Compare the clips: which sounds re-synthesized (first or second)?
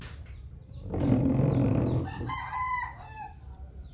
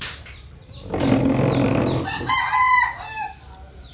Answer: first